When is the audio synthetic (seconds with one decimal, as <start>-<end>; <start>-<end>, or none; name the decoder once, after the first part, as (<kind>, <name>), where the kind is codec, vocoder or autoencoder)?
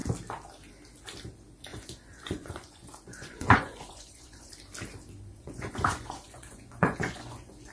1.7-4.5 (vocoder, Vocos); 5.3-7.7